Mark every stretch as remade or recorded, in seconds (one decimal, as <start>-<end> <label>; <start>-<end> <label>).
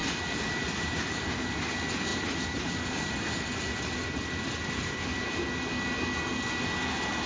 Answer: 0.0-0.5 remade; 0.5-2.1 recorded; 2.1-5.0 remade; 5.0-7.3 recorded